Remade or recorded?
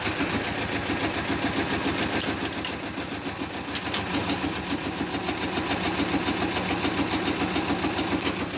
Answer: recorded